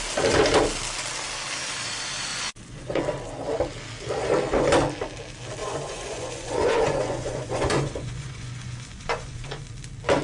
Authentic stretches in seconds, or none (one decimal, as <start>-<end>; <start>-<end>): 0.0-2.3; 3.0-5.6; 9.6-10.2